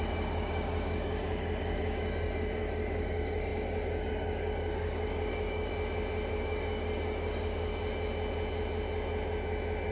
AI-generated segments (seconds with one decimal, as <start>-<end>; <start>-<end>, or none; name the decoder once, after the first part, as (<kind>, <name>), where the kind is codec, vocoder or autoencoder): 0.0-5.7 (codec, DAC); 6.3-7.7